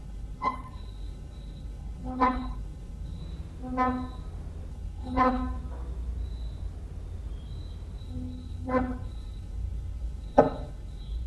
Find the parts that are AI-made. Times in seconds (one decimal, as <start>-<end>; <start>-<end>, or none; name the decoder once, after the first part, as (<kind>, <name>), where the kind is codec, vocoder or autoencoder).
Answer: 0.0-3.2 (codec, HILCodec); 4.7-5.4; 8.0-11.3